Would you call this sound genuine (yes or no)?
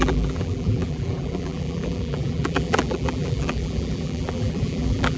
no